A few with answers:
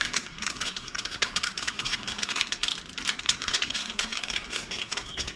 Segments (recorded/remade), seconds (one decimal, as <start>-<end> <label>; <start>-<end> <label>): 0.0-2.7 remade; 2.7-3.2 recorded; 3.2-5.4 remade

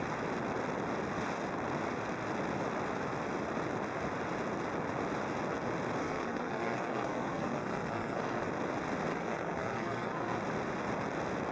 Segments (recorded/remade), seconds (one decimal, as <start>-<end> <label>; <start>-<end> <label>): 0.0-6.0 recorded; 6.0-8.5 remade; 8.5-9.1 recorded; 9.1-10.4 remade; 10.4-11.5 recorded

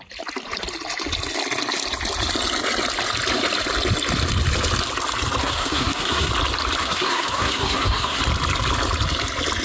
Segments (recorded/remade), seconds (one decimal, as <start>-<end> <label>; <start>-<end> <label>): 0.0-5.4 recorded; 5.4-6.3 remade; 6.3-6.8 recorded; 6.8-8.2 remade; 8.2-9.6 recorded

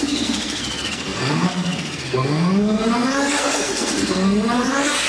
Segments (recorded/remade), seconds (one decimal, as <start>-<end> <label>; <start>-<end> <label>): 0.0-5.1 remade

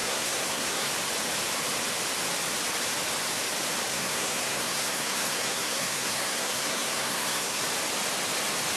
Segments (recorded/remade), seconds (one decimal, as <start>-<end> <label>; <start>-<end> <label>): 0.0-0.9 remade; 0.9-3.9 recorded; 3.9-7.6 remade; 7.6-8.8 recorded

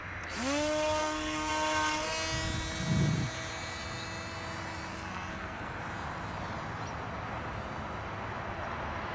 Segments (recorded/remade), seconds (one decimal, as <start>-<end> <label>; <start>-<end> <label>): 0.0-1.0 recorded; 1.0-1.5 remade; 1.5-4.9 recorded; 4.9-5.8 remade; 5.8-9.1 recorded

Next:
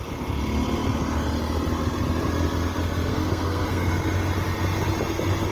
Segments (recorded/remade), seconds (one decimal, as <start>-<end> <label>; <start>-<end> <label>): 0.0-3.1 recorded; 3.1-3.9 remade; 3.9-5.5 recorded